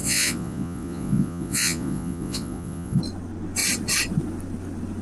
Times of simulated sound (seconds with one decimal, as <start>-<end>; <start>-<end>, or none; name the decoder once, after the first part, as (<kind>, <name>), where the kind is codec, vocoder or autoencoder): 0.0-3.0 (vocoder, Vocos)